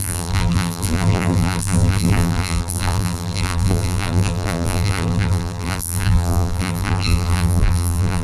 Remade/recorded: remade